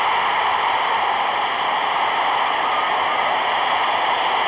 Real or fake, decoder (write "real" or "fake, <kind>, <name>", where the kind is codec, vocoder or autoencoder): real